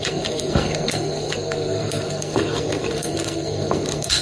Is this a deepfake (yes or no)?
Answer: yes